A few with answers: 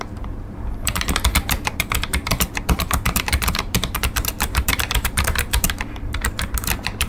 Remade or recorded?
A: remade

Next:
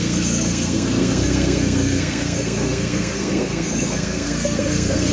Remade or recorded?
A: remade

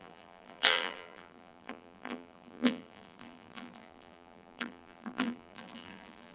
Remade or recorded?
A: remade